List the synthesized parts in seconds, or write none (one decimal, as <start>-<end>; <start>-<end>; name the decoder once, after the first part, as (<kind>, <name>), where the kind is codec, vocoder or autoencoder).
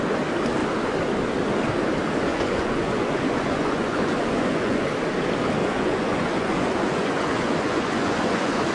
2.3-4.9 (vocoder, Vocos); 5.6-8.7